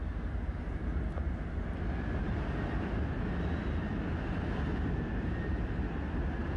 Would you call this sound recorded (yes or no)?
yes